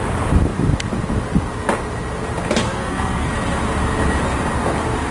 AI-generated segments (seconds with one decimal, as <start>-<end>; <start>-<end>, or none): 2.6-3.3